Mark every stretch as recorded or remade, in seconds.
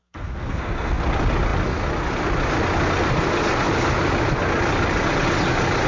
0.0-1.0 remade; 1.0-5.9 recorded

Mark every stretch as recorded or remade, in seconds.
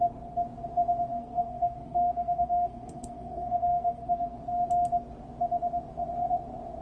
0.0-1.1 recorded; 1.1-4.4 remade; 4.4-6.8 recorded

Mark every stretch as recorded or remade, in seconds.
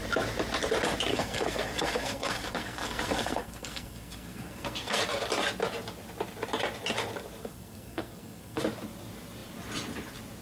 0.0-1.1 recorded; 1.1-5.0 remade; 5.0-7.4 recorded; 7.4-8.6 remade; 8.6-10.4 recorded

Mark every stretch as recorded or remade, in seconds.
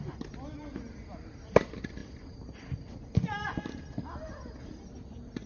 0.0-5.5 recorded